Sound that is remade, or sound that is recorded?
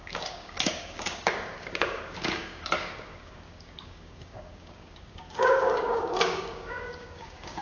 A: remade